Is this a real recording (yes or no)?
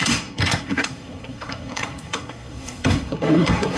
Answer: no